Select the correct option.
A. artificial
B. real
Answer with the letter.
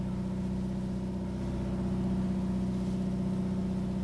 B